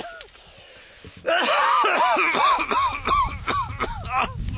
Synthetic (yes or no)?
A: no